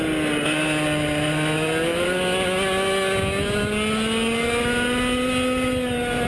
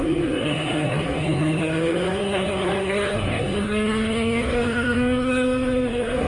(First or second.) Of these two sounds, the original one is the first